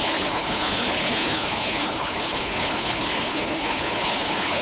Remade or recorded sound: remade